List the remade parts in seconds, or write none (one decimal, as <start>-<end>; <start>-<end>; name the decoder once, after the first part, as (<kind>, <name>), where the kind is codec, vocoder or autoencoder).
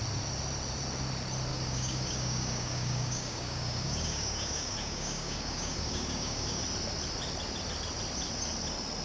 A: 1.5-6.6 (codec, DAC)